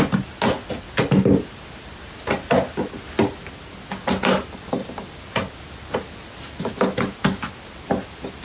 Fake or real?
real